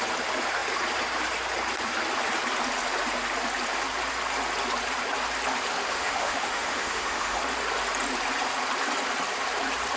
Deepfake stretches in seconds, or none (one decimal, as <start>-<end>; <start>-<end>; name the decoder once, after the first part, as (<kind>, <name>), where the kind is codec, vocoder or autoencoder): 5.8-7.4 (autoencoder, DAC-VAE)